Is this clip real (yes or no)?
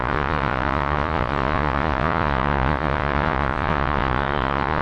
no